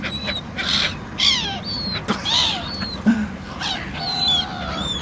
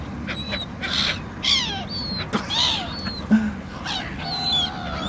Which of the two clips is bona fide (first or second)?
second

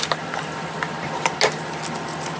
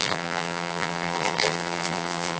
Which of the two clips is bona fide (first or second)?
first